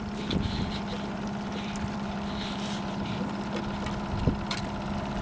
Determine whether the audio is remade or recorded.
recorded